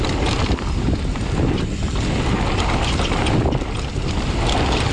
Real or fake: real